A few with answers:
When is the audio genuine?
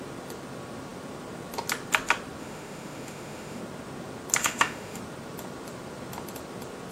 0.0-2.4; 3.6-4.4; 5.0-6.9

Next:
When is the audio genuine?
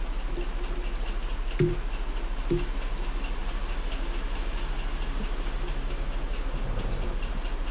0.0-7.7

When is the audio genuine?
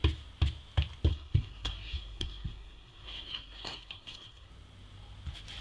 0.0-1.1; 4.5-5.6